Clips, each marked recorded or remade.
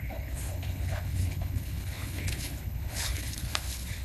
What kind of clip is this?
remade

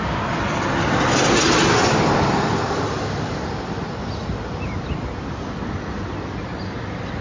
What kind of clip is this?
recorded